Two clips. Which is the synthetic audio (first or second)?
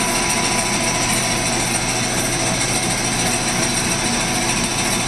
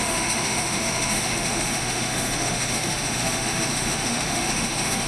second